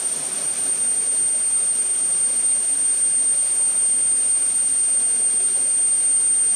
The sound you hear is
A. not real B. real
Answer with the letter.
B